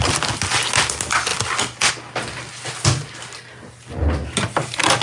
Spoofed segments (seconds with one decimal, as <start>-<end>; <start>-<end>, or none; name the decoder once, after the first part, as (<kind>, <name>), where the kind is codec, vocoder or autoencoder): none